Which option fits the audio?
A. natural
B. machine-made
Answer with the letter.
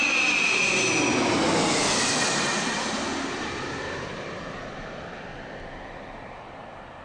A